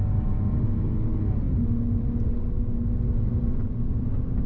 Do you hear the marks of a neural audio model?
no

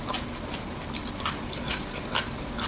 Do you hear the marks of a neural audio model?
no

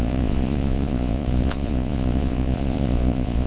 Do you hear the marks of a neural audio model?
yes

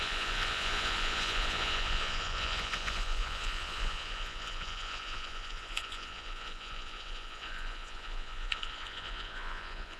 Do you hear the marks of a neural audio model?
yes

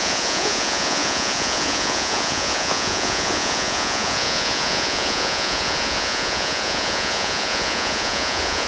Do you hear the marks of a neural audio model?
yes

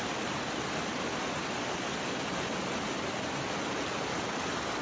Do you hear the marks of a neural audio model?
no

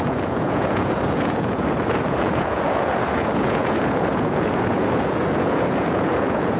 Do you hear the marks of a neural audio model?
yes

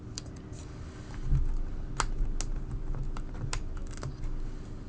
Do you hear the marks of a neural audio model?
no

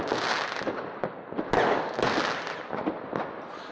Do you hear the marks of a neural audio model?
no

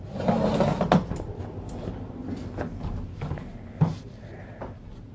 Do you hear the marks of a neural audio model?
no